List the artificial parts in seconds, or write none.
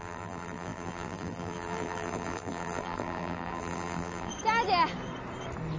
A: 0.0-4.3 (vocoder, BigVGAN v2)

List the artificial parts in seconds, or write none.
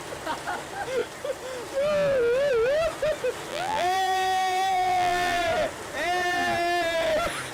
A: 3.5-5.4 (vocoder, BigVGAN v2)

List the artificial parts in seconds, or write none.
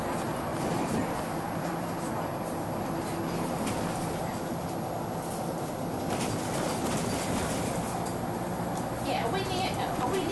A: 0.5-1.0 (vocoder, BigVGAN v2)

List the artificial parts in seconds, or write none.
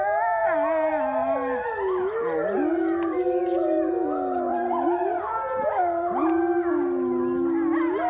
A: 4.5-5.2 (vocoder, BigVGAN v2)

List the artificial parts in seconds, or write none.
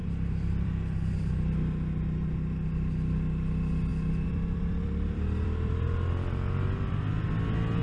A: 0.0-0.7 (vocoder, BigVGAN v2); 3.9-7.0